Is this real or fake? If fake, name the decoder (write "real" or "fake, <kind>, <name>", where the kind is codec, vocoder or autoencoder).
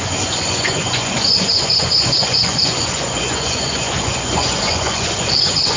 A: fake, vocoder, Vocos